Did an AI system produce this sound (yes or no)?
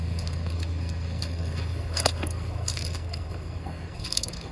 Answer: yes